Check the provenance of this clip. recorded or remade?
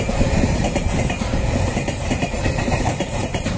remade